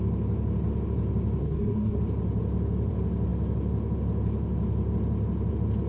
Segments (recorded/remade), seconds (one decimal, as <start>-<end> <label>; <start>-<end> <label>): 0.0-1.4 recorded; 1.4-2.0 remade; 2.0-5.9 recorded